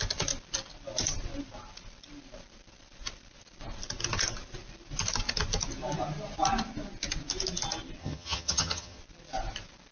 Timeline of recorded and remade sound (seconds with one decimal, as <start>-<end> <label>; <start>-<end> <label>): 0.0-8.0 recorded; 8.0-9.0 remade; 9.0-9.9 recorded